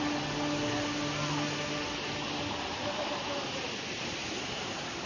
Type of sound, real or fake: real